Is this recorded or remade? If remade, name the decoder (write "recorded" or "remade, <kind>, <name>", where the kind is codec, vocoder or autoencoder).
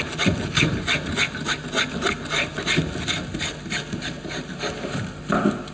recorded